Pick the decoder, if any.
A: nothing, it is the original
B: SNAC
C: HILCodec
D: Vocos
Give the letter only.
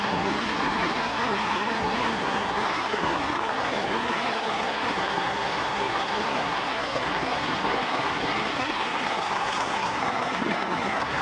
B